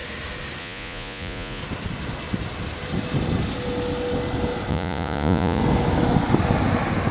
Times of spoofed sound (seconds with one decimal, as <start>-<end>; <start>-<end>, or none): 0.6-1.6; 4.7-5.6